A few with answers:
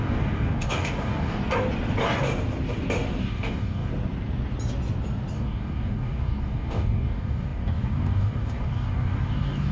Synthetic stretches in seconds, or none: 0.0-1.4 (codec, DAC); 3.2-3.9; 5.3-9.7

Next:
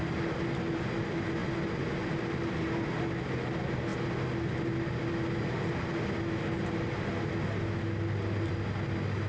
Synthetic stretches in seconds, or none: none

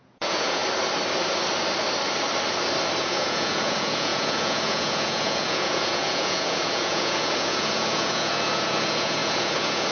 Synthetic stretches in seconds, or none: 0.0-0.6 (vocoder, Vocos); 3.0-9.9

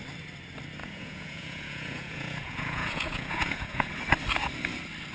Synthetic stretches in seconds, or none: 0.8-3.9 (vocoder, Vocos)